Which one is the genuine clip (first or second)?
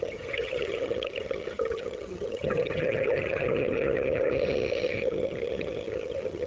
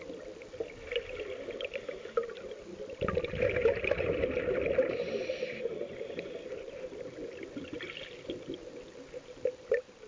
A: second